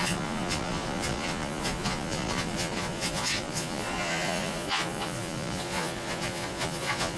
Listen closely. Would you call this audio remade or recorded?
remade